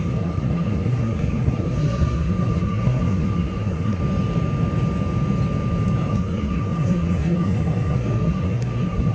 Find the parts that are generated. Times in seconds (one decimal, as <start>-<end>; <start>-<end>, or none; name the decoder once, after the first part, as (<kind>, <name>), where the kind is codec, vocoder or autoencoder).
0.0-4.0 (codec, SNAC); 6.1-9.1

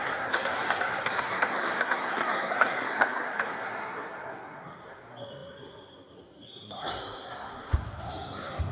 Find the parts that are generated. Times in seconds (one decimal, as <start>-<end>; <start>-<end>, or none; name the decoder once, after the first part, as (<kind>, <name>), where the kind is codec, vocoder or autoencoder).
0.0-8.7 (codec, SNAC)

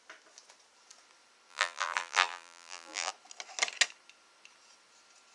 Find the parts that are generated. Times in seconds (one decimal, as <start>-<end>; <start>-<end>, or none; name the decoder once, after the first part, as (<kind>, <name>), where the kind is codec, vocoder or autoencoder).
1.5-3.1 (vocoder, BigVGAN v2)

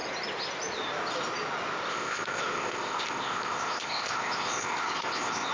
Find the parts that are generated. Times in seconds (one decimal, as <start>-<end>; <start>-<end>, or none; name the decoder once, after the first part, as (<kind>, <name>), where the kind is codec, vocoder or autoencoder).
1.9-5.5 (codec, ZipCodec)

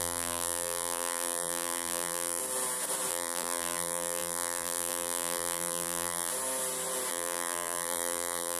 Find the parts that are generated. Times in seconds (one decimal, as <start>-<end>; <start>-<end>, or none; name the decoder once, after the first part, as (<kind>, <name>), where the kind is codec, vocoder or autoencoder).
0.0-2.4 (vocoder, BigVGAN v2); 3.1-6.3; 7.1-8.6

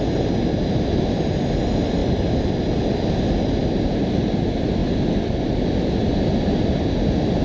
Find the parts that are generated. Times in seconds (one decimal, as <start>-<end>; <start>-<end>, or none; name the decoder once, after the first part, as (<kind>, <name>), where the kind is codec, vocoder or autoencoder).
none